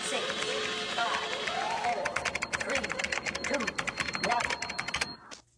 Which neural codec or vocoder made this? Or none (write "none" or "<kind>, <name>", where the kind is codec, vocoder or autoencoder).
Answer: none